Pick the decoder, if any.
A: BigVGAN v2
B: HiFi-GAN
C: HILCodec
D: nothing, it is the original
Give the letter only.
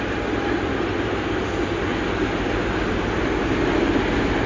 D